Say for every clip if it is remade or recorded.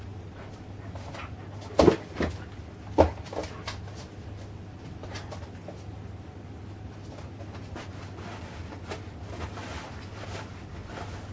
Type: recorded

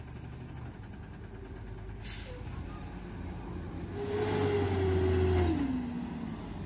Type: recorded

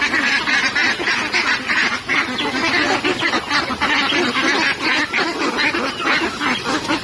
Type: recorded